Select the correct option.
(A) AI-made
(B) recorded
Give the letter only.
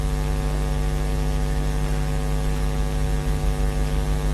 B